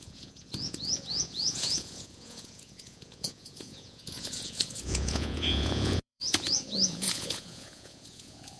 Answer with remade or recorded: remade